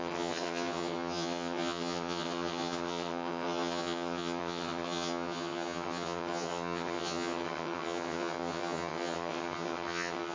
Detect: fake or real fake